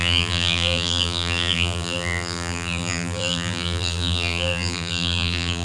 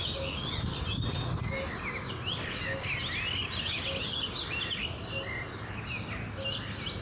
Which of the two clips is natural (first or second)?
second